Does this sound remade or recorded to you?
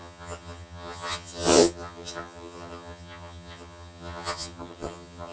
remade